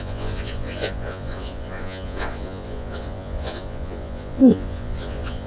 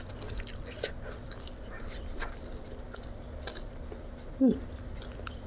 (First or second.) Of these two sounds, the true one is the second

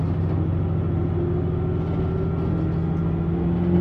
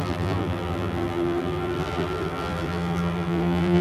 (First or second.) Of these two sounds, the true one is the first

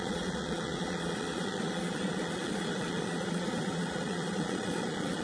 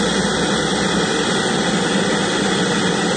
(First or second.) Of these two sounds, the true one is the second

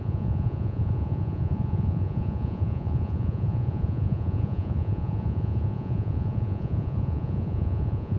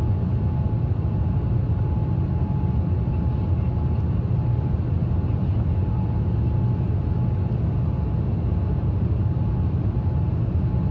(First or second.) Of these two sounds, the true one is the second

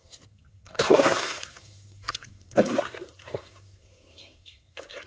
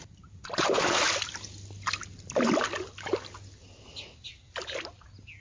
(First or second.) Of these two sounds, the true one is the second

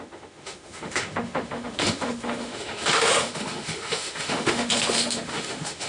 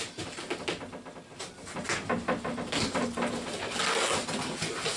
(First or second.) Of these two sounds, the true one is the second